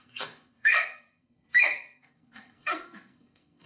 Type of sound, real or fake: fake